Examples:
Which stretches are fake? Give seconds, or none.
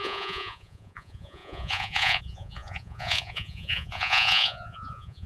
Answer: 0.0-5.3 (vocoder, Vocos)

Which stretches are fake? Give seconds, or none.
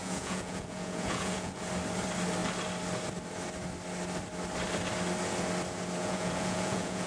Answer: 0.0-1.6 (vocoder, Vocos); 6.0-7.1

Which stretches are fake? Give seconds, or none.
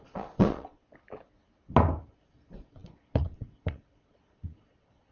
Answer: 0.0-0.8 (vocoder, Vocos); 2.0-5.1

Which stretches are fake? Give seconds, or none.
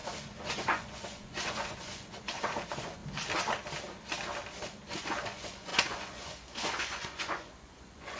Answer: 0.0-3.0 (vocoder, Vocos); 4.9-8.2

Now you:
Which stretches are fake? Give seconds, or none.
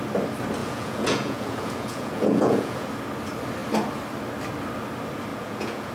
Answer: 0.6-2.9 (vocoder, Vocos); 5.3-5.9